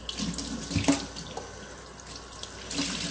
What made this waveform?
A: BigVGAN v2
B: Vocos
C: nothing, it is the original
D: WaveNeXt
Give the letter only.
C